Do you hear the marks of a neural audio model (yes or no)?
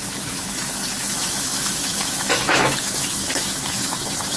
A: yes